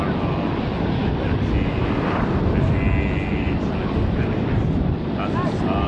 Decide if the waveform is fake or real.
real